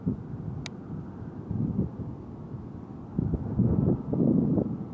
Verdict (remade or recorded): recorded